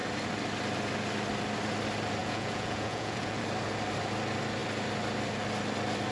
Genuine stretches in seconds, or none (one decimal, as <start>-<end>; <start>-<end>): 0.0-2.2; 3.4-6.1